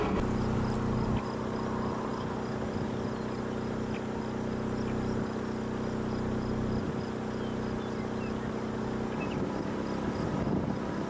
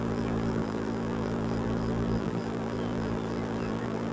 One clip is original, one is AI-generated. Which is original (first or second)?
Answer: first